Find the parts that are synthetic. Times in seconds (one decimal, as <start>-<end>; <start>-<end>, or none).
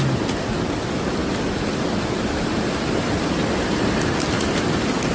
none